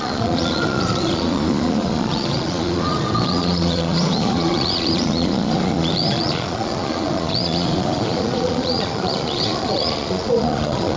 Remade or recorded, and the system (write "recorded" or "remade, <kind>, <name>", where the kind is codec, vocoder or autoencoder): remade, vocoder, Vocos